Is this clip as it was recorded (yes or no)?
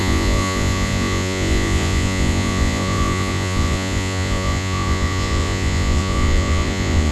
no